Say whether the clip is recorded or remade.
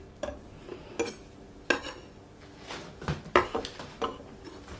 recorded